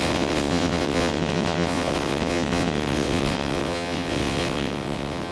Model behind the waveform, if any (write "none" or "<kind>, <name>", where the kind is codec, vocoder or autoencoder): vocoder, WaveNeXt